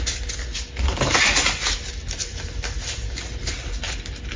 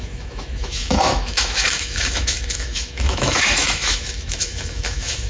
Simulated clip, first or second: second